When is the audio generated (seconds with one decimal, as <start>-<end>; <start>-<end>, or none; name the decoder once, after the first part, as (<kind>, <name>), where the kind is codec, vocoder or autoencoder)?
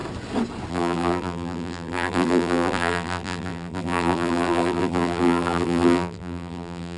0.7-7.0 (vocoder, BigVGAN v2)